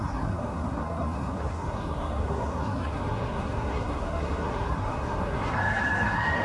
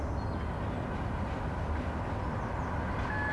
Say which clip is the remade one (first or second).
first